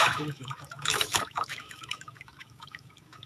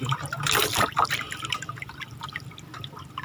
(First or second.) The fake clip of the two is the first